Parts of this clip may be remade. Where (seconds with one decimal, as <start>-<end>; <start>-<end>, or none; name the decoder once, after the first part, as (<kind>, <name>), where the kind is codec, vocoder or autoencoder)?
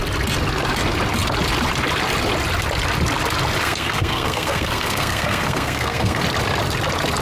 3.6-6.2 (codec, SNAC)